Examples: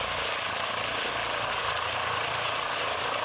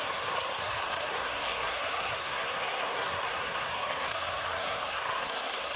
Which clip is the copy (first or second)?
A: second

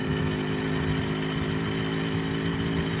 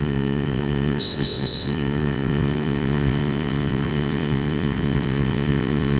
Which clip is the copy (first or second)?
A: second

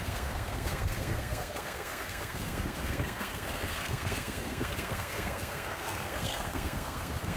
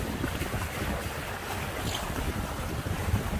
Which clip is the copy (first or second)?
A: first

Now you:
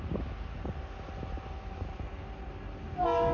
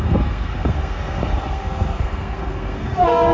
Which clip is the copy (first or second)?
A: second